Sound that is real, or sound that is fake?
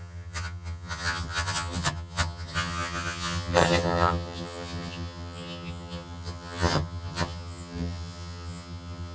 fake